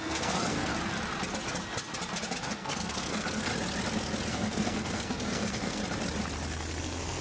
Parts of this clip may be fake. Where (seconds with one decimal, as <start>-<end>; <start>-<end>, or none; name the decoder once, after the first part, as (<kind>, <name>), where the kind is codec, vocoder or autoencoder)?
0.0-0.7 (codec, SNAC); 2.4-3.5; 4.3-5.8; 6.8-7.2